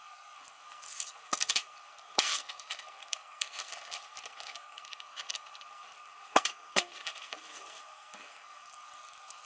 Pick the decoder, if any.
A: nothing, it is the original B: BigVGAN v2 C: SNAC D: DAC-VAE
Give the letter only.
C